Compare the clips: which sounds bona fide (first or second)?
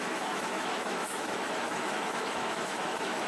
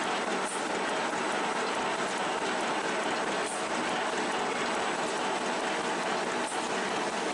second